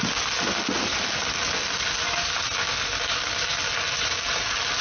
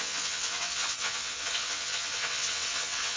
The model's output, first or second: second